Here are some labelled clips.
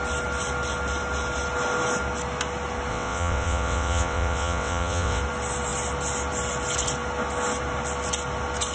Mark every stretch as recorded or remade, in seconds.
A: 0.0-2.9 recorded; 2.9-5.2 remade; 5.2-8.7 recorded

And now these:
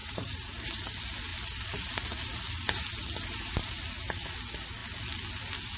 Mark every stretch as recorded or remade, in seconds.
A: 0.0-0.8 remade; 0.8-5.8 recorded

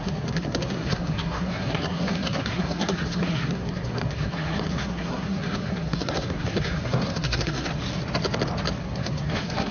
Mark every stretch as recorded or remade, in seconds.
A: 0.0-7.7 remade; 7.7-8.8 recorded; 8.8-9.7 remade